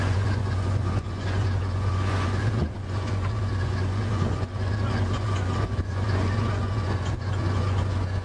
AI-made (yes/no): yes